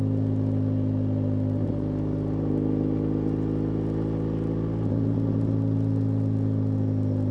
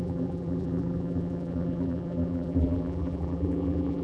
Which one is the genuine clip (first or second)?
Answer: first